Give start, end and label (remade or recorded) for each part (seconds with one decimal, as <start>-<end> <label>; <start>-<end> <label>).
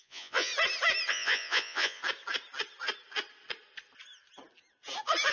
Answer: 0.0-0.5 remade; 0.5-1.1 recorded; 1.1-2.0 remade; 2.0-5.3 recorded